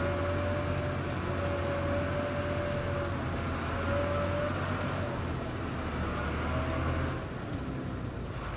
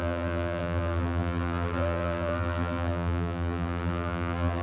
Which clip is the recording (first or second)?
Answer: first